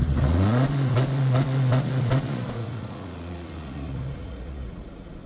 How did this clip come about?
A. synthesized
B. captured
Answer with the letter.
A